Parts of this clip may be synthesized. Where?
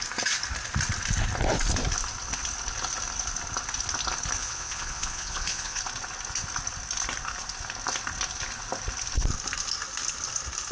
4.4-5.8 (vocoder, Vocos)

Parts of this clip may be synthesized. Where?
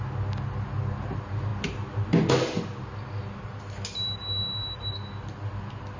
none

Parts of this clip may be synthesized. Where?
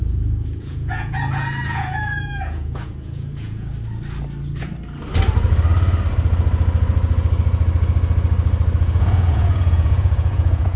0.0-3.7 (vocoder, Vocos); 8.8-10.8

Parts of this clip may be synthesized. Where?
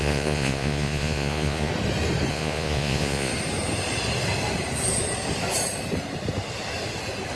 0.0-1.7 (vocoder, Vocos); 2.3-3.3